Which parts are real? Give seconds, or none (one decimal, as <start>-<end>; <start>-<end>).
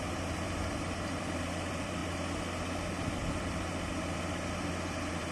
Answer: 2.0-4.5